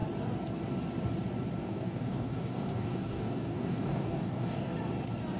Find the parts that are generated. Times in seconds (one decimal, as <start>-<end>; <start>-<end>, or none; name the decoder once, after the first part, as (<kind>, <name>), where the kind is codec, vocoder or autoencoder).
1.6-4.7 (codec, DAC)